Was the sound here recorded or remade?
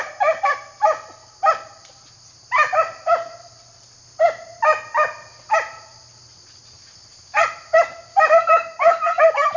recorded